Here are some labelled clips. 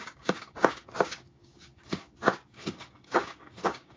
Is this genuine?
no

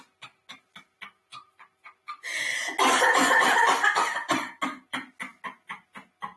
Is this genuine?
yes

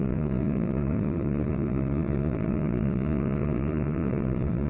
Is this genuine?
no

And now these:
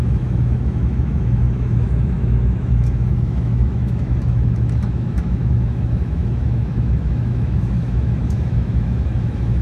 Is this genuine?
no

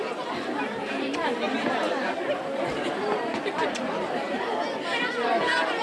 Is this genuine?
no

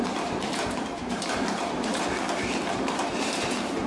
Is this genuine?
no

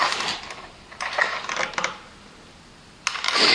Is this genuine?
yes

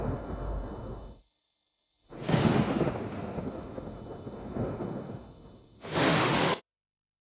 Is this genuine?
no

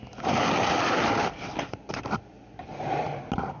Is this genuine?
yes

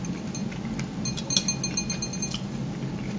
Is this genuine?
yes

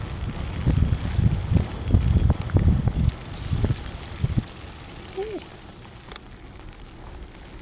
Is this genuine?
yes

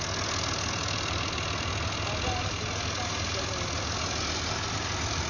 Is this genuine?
yes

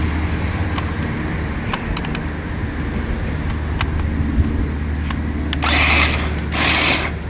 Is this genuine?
yes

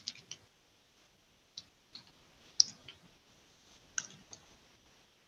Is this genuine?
yes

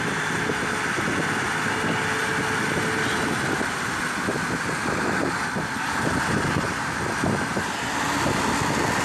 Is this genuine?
yes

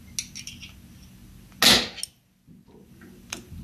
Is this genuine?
yes